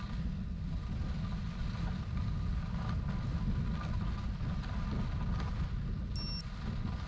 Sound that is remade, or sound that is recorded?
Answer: recorded